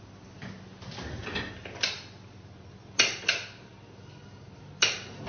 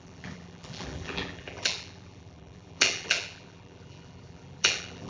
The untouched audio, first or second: first